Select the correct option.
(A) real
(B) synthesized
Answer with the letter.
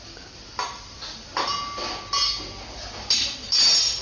A